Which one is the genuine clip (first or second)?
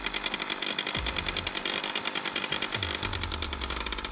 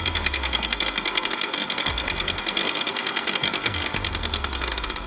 first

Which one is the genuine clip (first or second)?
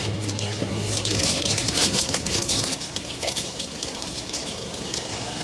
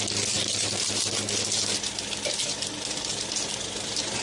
second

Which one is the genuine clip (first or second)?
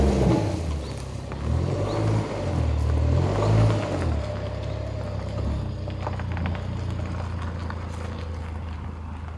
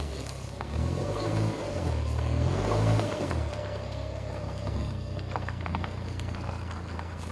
first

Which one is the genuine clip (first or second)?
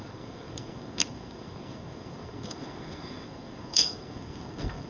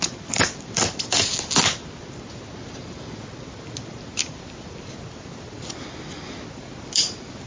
second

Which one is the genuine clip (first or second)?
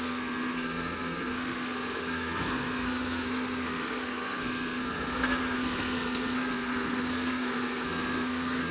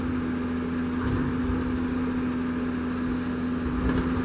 second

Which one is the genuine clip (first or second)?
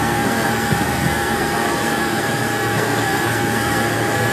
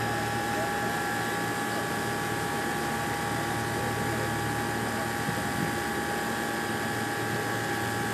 second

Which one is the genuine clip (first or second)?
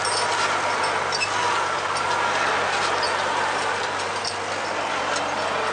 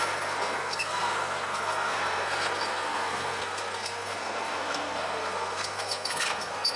first